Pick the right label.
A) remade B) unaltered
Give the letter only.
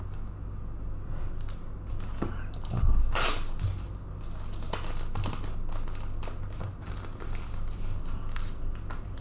B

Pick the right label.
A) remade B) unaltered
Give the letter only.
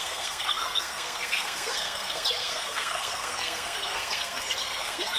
A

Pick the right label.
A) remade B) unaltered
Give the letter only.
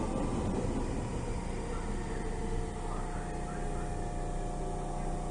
B